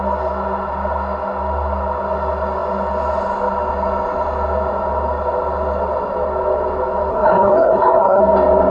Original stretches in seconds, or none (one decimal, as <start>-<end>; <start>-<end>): 0.0-7.1; 8.2-8.7